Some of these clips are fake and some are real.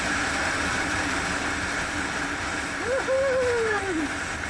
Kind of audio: real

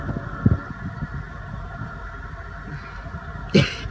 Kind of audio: real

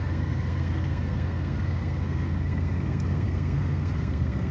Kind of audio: fake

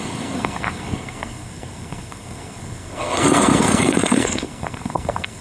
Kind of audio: fake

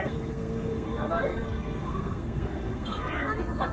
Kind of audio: fake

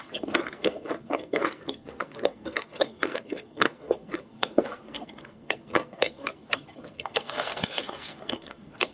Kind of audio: fake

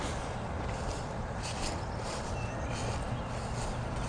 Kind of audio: real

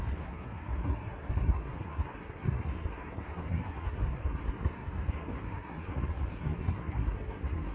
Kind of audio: fake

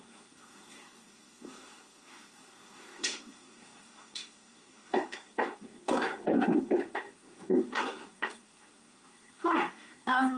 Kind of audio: fake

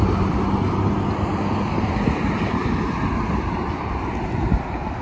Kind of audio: real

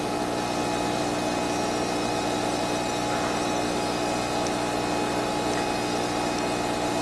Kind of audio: real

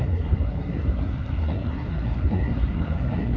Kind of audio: fake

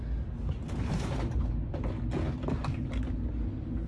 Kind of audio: real